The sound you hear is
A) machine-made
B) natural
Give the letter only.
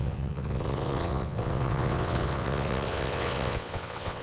A